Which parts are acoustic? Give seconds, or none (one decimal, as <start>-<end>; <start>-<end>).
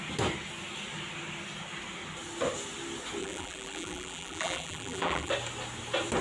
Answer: 0.0-3.2; 5.3-6.2